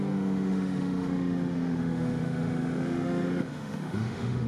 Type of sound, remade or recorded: remade